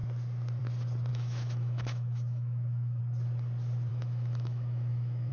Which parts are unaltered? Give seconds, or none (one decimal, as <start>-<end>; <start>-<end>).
0.0-1.1; 3.0-3.9